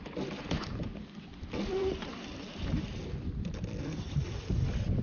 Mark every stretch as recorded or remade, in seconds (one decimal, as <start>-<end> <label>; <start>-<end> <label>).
0.0-1.3 recorded; 1.3-4.3 remade; 4.3-5.0 recorded